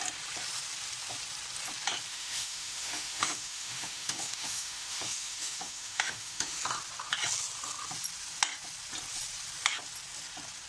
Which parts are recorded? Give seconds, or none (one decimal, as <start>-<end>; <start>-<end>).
0.0-2.1; 6.6-10.7